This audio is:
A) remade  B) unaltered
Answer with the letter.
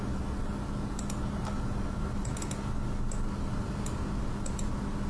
B